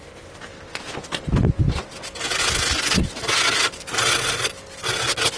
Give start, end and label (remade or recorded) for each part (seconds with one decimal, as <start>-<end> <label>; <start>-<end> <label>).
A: 0.0-0.5 recorded; 0.5-2.4 remade; 2.4-5.4 recorded